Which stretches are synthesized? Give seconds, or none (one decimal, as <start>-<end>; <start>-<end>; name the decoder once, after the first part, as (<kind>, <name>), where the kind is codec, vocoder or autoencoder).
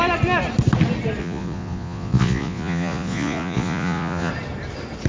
1.2-4.3 (vocoder, Vocos)